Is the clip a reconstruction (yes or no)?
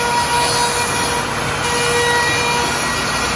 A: no